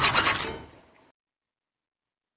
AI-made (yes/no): no